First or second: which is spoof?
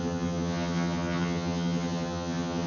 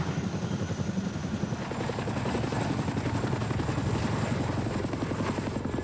first